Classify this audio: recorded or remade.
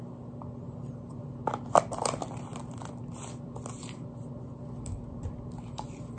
recorded